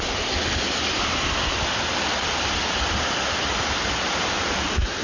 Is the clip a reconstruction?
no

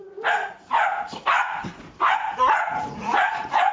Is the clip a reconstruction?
yes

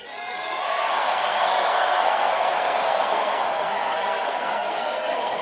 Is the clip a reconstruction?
yes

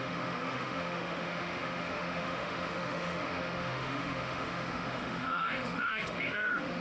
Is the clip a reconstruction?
yes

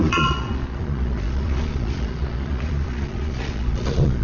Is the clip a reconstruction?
yes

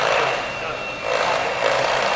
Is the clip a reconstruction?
no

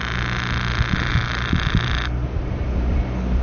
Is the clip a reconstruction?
no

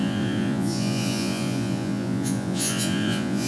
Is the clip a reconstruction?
yes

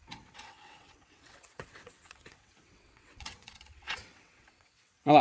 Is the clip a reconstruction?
yes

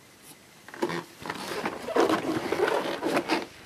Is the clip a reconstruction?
yes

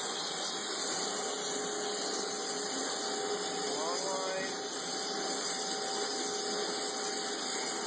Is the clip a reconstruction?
no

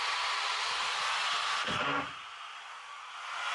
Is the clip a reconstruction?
no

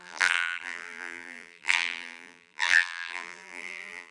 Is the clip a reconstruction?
yes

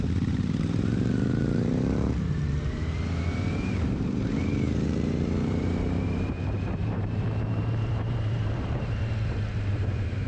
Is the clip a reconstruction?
yes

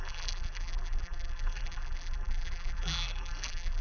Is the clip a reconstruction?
yes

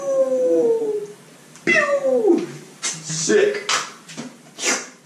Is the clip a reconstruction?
no